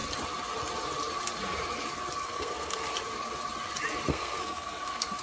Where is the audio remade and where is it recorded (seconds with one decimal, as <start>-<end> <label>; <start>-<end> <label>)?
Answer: 0.0-2.2 recorded; 2.2-2.9 remade; 2.9-4.1 recorded; 4.1-5.2 remade